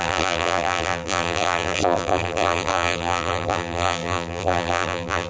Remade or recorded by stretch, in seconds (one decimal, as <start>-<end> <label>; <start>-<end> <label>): 0.0-5.3 remade